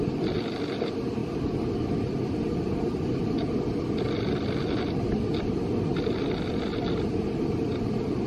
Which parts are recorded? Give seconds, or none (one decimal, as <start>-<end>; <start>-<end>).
0.0-8.3